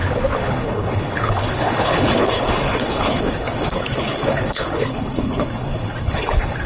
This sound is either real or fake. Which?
fake